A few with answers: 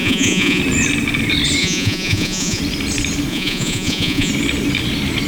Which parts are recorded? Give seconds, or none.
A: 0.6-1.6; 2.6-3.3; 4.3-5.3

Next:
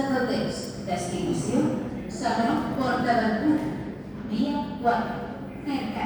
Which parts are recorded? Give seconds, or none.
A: 0.0-6.1

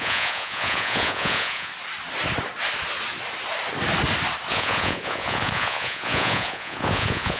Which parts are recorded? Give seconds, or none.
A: 1.7-4.5

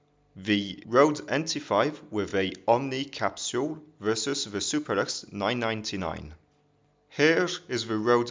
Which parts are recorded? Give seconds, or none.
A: 0.0-8.3